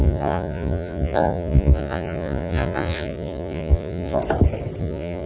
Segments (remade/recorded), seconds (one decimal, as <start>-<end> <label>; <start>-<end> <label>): 0.0-4.2 remade; 4.2-4.8 recorded; 4.8-5.3 remade